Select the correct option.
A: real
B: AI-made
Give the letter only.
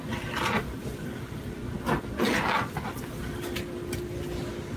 A